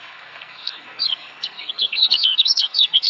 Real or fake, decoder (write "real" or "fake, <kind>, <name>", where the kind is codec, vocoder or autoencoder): fake, codec, SNAC